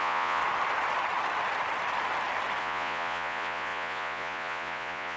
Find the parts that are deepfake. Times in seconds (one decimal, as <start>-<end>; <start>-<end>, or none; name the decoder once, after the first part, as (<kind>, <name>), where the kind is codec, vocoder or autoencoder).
0.0-0.4 (vocoder, Vocos); 2.6-5.2